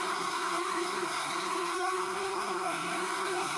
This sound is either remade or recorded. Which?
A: remade